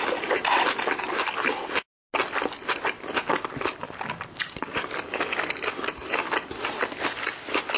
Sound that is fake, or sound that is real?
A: real